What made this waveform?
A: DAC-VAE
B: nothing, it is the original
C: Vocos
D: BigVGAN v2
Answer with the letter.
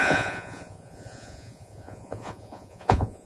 C